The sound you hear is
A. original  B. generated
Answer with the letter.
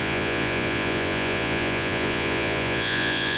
B